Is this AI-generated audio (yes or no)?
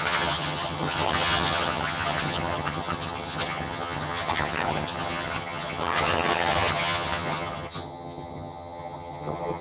yes